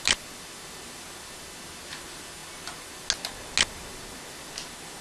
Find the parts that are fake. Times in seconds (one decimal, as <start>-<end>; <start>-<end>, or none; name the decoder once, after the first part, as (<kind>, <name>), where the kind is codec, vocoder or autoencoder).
none